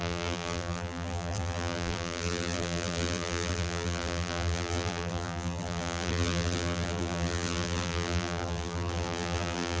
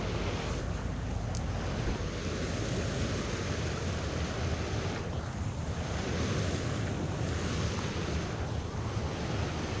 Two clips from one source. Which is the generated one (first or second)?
first